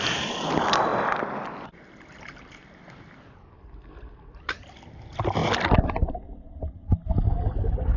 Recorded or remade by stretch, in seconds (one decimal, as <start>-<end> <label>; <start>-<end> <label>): 0.0-8.0 recorded